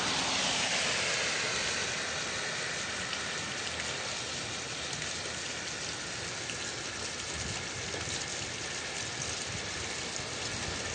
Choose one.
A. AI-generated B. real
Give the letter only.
B